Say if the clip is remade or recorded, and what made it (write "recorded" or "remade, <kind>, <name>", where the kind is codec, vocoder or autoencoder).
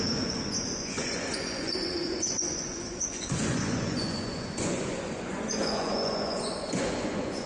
remade, vocoder, Vocos